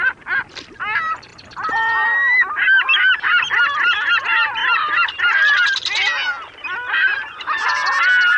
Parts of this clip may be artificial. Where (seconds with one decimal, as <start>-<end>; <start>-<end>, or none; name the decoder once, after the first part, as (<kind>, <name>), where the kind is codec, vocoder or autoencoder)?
none